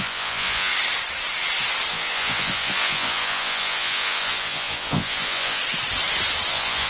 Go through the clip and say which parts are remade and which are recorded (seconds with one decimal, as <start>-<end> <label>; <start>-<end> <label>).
0.0-0.7 remade; 0.7-1.9 recorded; 1.9-5.6 remade; 5.6-6.5 recorded; 6.5-6.9 remade

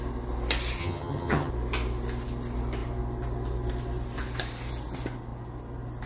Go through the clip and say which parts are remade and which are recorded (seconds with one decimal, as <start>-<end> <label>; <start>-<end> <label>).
0.0-0.8 recorded; 0.8-1.5 remade; 1.5-6.1 recorded

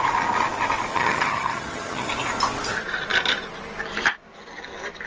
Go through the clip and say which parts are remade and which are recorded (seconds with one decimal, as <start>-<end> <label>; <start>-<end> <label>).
0.0-0.9 recorded; 0.9-2.1 remade; 2.1-5.1 recorded

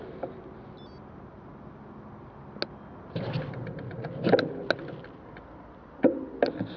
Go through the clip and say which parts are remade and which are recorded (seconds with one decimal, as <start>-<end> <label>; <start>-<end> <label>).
0.0-6.8 recorded

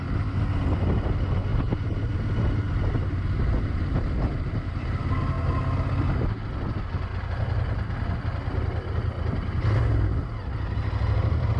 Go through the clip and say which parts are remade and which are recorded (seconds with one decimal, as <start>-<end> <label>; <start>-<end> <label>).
0.0-1.5 recorded; 1.5-2.1 remade; 2.1-4.3 recorded; 4.3-5.0 remade; 5.0-11.6 recorded

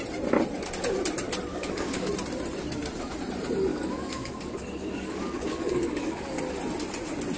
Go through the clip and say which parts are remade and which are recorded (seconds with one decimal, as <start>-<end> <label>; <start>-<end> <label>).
0.0-1.5 recorded; 1.5-2.1 remade; 2.1-3.7 recorded; 3.7-6.4 remade; 6.4-7.4 recorded